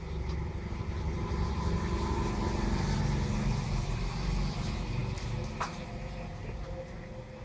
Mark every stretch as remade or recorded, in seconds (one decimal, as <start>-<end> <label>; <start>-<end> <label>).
0.0-7.4 recorded